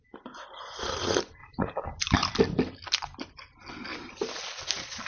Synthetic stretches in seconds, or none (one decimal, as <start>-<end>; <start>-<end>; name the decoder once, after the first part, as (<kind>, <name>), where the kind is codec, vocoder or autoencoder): 1.4-2.4 (vocoder, BigVGAN v2); 3.9-4.4

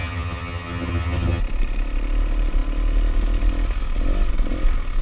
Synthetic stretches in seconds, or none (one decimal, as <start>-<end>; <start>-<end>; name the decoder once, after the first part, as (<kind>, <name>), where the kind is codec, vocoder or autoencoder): 0.0-1.4 (vocoder, HiFi-GAN)

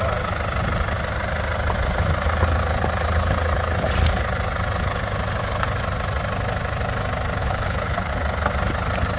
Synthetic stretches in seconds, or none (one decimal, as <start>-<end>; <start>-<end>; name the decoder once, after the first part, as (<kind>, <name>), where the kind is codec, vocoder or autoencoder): 7.4-8.1 (codec, HILCodec)

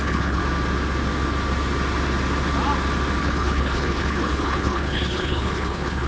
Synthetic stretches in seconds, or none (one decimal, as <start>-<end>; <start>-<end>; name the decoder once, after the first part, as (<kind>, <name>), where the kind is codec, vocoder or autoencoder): 0.0-0.4 (codec, HILCodec); 3.2-6.1

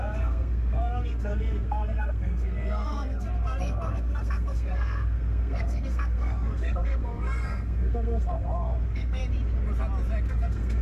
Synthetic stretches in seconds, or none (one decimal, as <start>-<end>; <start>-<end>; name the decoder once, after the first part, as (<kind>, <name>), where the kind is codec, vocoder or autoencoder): 0.0-9.2 (codec, SNAC); 10.3-10.8

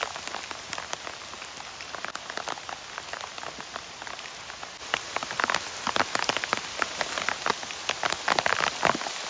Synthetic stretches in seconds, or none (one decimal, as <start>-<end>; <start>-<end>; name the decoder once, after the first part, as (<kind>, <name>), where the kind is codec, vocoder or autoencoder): none

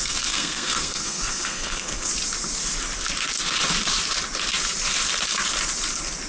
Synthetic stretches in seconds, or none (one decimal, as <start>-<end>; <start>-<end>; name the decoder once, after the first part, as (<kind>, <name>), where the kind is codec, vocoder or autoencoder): 0.0-2.1 (codec, SNAC)